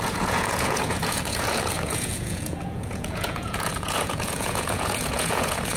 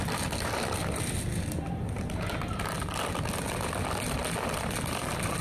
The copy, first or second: first